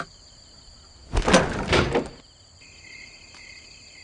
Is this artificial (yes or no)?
no